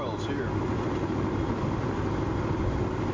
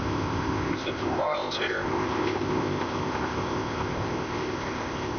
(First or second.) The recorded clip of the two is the first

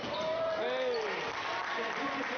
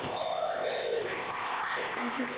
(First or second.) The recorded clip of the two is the first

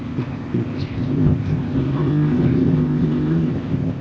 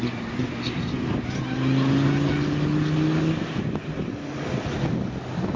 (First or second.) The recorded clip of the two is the second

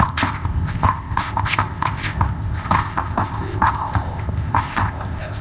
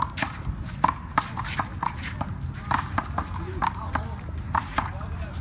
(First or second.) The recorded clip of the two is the second